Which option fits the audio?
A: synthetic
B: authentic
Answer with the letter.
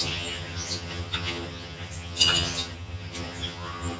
A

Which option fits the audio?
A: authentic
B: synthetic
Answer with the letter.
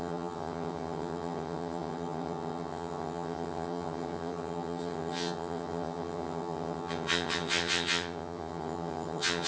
B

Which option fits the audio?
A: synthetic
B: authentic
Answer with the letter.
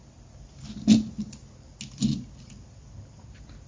B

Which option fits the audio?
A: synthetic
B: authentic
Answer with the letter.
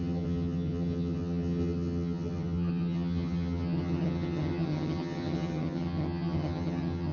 A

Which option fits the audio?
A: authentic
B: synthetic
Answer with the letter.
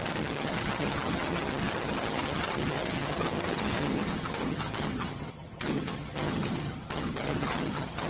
B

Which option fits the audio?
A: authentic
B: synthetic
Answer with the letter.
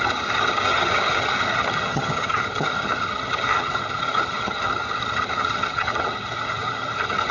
B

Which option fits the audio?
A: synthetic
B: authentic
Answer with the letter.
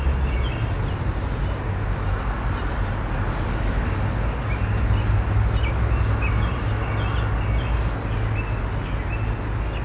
B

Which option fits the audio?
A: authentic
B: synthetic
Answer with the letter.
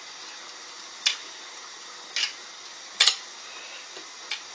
A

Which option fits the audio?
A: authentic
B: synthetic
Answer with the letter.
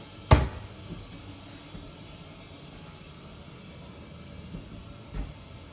A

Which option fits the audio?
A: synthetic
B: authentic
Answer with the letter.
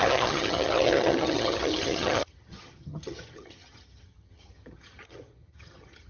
A